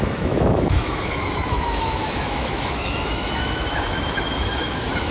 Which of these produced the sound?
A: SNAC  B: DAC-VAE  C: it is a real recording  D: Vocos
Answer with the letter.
B